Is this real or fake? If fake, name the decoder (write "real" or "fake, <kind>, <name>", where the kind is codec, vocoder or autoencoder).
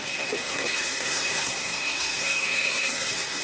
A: fake, codec, SNAC